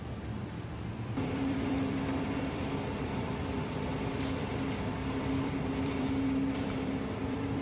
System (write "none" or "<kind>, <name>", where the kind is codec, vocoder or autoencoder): vocoder, BigVGAN v2